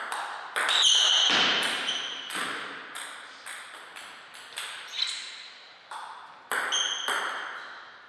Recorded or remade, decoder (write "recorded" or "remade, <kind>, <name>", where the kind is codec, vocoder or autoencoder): recorded